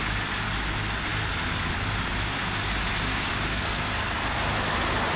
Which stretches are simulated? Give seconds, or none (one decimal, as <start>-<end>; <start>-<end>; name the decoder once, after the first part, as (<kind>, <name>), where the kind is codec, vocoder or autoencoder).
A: 3.5-4.4 (codec, SNAC)